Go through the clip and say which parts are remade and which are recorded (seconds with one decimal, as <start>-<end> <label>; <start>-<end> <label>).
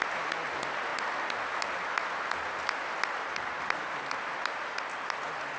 0.0-5.6 recorded